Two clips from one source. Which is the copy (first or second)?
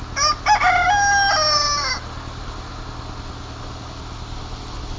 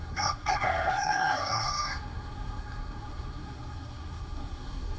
second